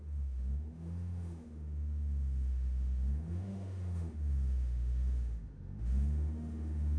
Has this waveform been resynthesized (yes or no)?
yes